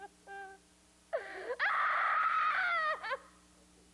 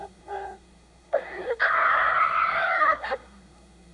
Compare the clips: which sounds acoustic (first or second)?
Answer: first